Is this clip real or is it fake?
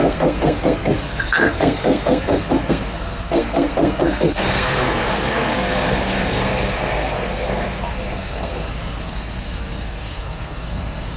fake